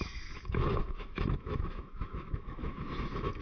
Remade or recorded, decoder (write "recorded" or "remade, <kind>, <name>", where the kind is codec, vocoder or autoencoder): remade, autoencoder, DAC-VAE